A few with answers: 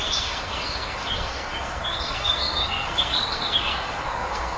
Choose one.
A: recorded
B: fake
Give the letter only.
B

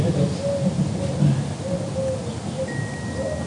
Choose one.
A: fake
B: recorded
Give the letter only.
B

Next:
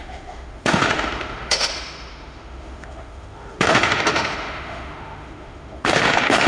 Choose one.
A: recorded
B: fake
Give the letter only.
B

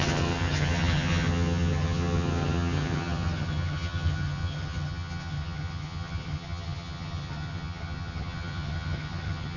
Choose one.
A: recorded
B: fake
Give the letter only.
B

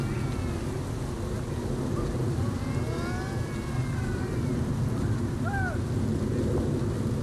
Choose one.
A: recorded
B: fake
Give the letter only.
A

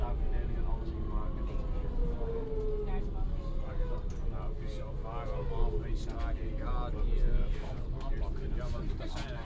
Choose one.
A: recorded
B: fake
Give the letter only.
A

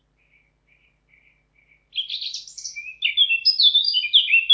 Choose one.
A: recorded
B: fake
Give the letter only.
A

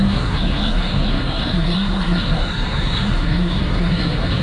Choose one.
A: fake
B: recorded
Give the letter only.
A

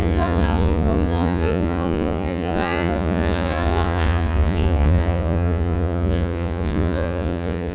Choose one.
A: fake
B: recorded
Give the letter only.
A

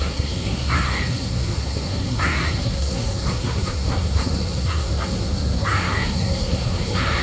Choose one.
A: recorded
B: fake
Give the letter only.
B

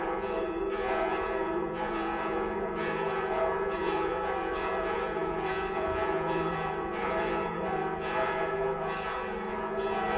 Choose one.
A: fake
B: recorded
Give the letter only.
A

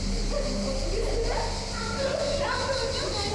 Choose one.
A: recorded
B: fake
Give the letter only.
A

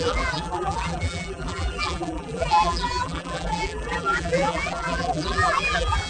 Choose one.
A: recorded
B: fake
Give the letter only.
B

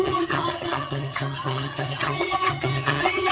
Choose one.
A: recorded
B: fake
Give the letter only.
B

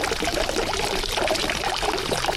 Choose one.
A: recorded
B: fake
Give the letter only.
A